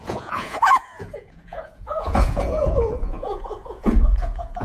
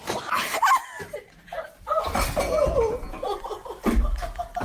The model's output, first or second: first